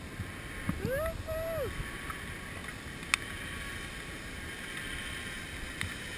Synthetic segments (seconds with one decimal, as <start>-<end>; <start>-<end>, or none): none